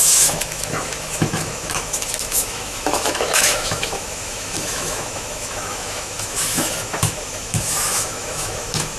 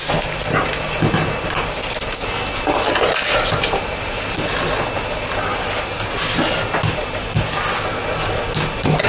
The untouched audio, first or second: second